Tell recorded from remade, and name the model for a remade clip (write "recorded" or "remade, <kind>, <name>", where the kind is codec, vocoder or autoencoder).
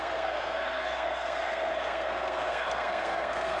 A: remade, codec, SNAC